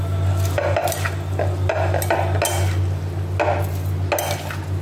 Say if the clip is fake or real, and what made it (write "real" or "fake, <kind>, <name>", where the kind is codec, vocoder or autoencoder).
real